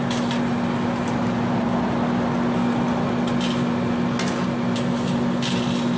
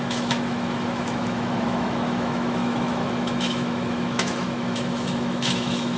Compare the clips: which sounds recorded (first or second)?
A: first